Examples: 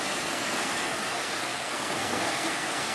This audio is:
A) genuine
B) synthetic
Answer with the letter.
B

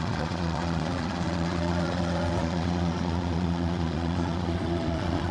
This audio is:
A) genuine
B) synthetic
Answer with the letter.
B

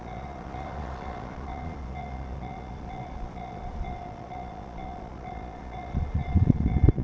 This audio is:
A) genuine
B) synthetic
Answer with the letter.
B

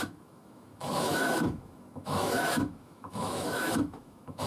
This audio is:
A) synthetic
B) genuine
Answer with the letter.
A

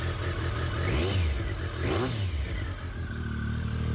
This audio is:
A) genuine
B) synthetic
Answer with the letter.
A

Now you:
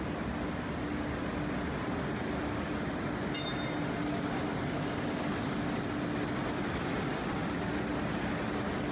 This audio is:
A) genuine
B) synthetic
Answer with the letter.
A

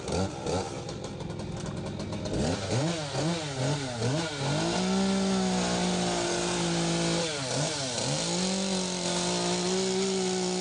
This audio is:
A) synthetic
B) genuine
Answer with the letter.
B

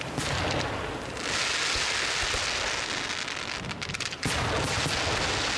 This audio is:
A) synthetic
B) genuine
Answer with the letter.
B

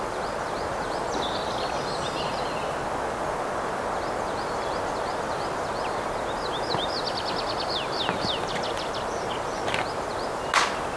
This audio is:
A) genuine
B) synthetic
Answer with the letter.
A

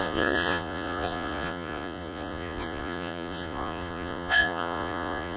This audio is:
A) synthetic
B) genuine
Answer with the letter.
A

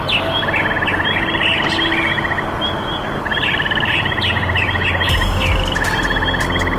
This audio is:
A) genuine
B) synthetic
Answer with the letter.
A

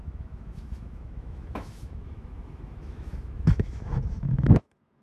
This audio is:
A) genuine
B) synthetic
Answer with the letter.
B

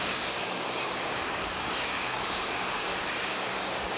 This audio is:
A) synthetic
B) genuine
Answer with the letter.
A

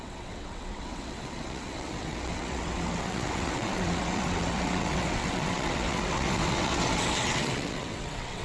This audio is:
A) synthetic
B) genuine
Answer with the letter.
A